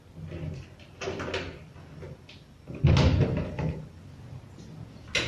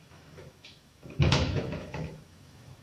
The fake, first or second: second